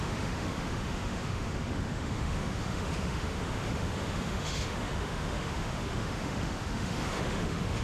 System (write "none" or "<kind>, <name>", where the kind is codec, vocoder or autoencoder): autoencoder, DAC-VAE